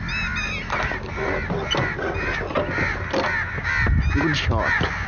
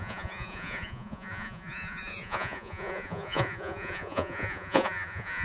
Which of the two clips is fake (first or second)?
second